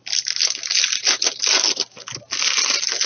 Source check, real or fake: real